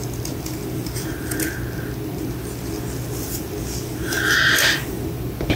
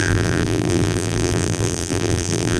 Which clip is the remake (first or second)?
second